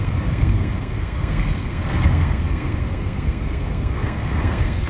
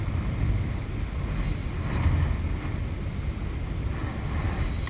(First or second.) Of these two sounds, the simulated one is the first